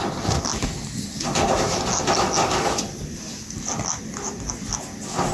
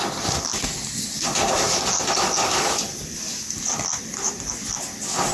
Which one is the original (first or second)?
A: first